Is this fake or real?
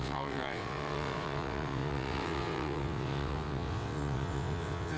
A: fake